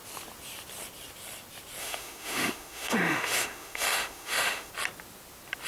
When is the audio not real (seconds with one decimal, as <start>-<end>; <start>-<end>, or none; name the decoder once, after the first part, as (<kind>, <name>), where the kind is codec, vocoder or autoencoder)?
1.8-4.7 (autoencoder, DAC-VAE)